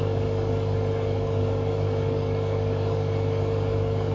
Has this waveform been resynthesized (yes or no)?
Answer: yes